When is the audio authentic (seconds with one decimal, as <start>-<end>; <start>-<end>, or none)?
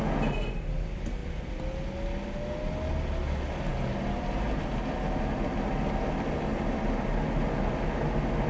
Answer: 0.0-8.5